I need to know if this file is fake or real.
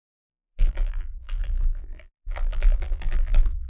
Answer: fake